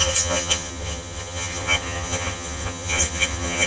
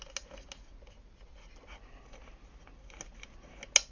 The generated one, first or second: first